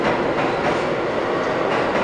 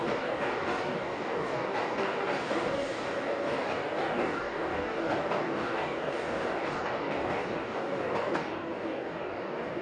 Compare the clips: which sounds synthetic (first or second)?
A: second